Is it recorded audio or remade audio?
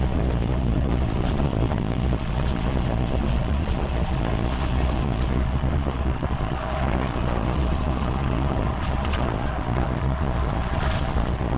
remade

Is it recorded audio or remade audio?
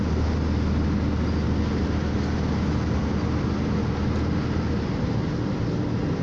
recorded